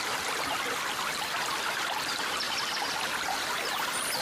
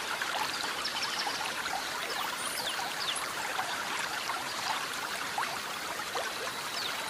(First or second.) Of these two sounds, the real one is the first